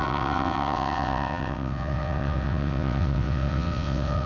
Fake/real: fake